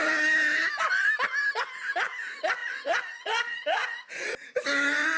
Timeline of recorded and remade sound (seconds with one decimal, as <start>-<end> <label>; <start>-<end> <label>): 0.0-2.6 recorded; 2.6-4.1 remade; 4.1-5.2 recorded